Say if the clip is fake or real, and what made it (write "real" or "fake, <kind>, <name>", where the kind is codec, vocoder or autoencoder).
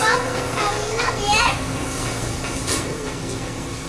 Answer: fake, codec, SNAC